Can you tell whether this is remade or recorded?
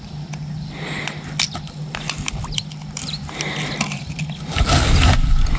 recorded